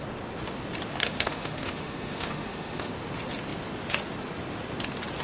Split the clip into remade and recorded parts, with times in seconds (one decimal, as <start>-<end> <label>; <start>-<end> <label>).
0.0-1.0 recorded; 1.0-2.9 remade; 2.9-5.2 recorded